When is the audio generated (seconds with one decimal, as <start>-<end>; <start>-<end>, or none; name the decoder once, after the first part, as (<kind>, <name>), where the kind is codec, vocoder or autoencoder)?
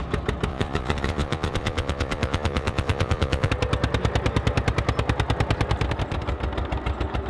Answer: 0.5-3.5 (vocoder, Vocos)